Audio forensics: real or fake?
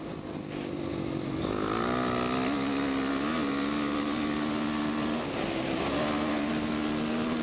real